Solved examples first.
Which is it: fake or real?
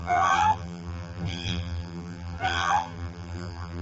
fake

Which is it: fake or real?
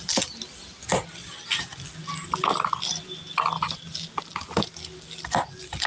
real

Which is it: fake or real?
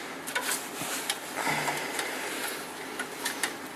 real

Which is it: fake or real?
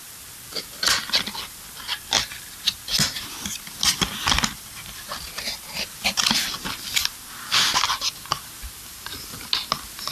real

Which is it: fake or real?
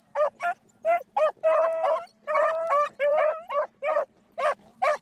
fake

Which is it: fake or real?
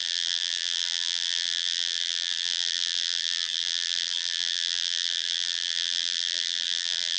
fake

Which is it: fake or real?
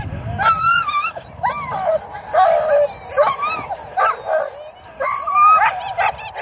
real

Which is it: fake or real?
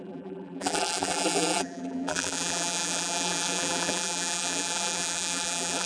fake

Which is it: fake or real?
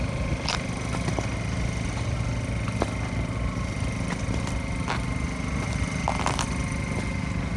real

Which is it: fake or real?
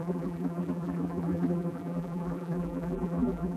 fake